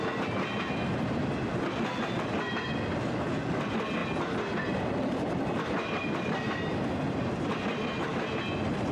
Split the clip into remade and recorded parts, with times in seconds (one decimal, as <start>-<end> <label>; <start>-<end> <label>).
0.0-8.9 recorded